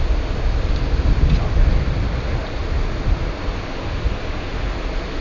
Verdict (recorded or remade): recorded